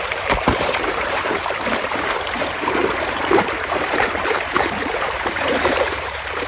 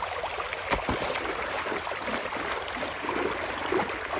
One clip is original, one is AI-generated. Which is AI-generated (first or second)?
first